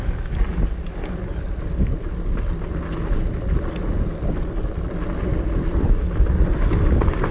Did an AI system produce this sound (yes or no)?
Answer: no